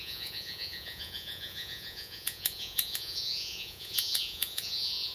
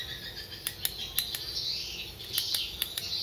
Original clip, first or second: second